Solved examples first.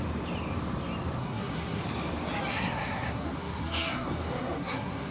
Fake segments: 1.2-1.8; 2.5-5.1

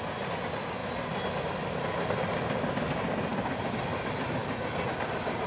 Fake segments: none

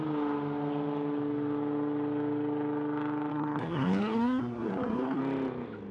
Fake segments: 3.3-5.2

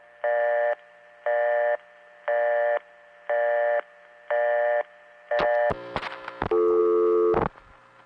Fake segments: none

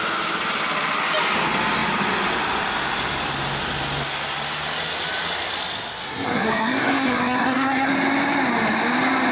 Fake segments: 6.0-7.9

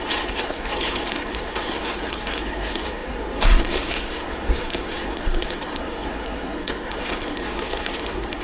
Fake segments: 0.0-8.4